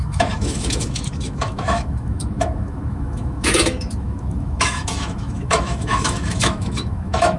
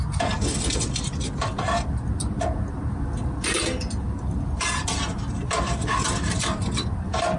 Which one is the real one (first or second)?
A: second